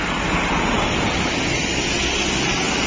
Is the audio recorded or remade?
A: recorded